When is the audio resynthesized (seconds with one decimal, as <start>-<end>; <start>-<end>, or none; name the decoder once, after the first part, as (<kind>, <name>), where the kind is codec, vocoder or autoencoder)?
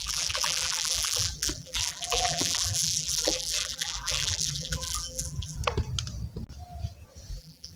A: 0.0-5.6 (vocoder, BigVGAN v2); 7.3-7.8